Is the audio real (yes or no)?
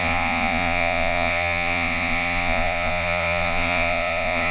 no